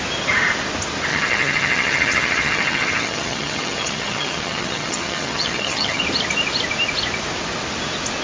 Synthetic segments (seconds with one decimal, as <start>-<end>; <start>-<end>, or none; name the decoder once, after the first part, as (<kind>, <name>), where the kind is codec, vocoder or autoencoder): 1.1-6.0 (vocoder, HiFi-GAN)